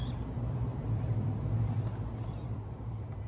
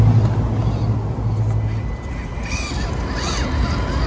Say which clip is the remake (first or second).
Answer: first